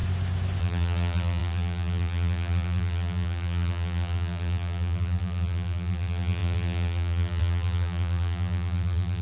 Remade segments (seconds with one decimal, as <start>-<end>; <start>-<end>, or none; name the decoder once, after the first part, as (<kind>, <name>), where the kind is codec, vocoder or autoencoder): 0.6-9.2 (vocoder, BigVGAN v2)